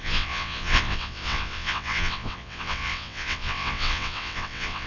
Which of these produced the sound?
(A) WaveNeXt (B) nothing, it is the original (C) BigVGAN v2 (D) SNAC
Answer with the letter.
A